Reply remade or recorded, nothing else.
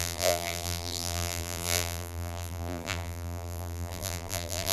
remade